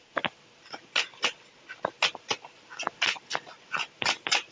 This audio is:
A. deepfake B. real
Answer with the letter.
B